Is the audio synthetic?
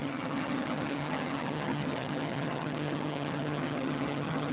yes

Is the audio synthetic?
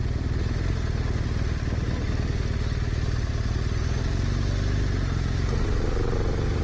no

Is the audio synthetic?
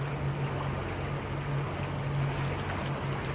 no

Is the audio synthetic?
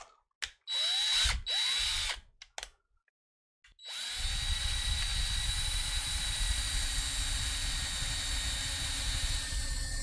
no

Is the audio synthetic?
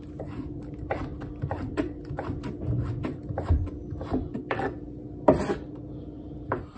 no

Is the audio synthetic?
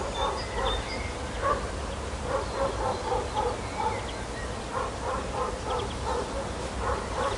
no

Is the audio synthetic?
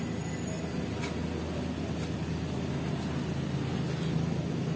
no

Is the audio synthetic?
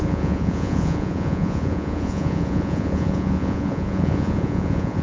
yes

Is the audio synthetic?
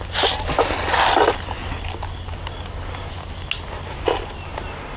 no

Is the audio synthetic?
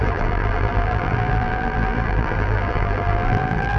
yes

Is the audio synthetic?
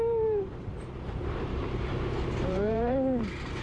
yes